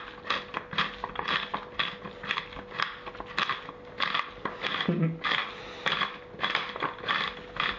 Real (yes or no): yes